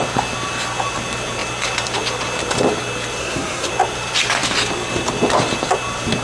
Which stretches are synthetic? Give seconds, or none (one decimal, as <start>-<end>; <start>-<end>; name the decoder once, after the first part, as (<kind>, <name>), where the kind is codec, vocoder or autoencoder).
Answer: 3.2-3.7 (codec, SNAC)